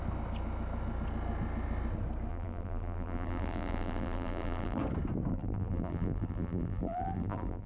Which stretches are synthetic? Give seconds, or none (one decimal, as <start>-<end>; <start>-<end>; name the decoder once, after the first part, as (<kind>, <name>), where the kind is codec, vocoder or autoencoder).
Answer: 2.3-4.8 (vocoder, BigVGAN v2); 5.3-7.7